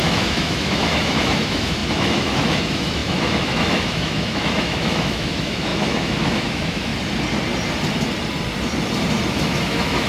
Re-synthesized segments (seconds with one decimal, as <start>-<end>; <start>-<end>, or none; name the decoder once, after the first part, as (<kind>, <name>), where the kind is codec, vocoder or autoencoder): 0.0-6.9 (autoencoder, DAC-VAE); 9.3-10.1